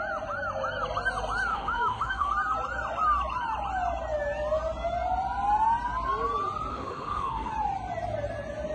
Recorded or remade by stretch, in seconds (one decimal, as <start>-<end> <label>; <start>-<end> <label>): 0.0-1.5 recorded; 1.5-2.3 remade; 2.3-6.7 recorded; 6.7-7.5 remade; 7.5-8.7 recorded